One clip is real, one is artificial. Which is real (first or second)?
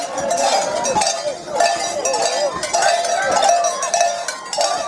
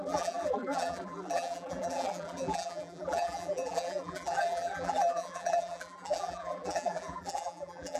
first